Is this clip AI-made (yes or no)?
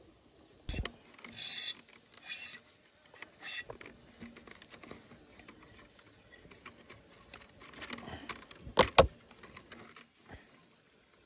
no